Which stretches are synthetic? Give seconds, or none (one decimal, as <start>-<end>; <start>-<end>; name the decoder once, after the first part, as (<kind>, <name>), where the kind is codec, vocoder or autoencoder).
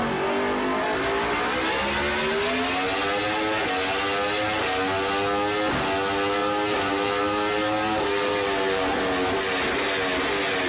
6.4-9.0 (vocoder, BigVGAN v2)